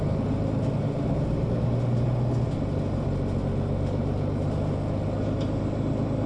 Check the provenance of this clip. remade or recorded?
recorded